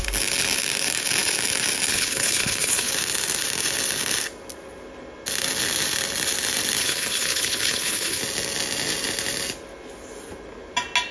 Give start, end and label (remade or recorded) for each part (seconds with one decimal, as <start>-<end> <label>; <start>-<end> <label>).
0.0-1.9 recorded; 1.9-2.9 remade; 2.9-6.8 recorded; 6.8-8.2 remade; 8.2-11.1 recorded